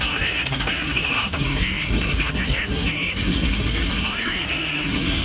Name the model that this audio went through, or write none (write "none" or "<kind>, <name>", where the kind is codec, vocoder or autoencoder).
codec, SNAC